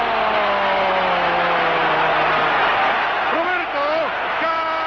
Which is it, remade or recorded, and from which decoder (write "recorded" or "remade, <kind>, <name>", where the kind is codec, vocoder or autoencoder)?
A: recorded